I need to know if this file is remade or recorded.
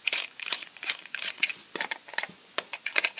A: remade